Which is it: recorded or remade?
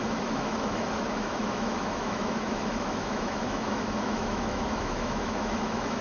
remade